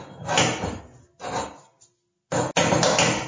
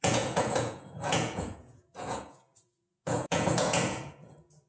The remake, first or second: second